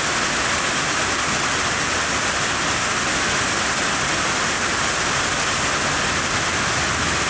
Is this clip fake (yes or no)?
no